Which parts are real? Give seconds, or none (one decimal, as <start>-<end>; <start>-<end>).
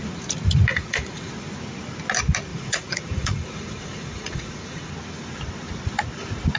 0.0-0.7; 1.3-2.5; 4.9-6.6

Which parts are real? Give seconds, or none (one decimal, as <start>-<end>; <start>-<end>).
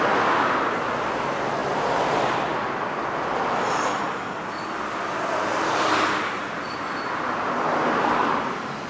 0.0-8.9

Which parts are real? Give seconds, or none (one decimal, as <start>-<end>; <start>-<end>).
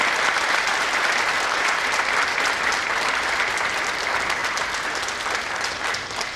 0.0-6.4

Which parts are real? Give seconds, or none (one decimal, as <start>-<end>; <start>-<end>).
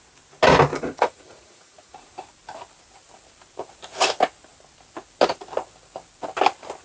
0.0-0.7; 2.1-6.8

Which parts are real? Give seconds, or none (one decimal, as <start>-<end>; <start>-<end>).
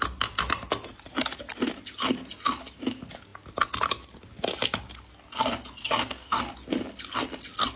0.0-5.8; 6.4-7.8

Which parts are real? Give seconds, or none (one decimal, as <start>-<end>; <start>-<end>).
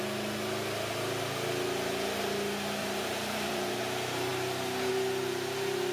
0.0-2.8; 3.8-5.9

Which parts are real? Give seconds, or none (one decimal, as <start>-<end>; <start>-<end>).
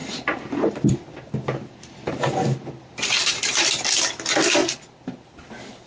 4.6-5.9